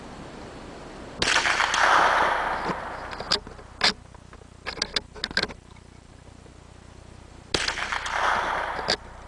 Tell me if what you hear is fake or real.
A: real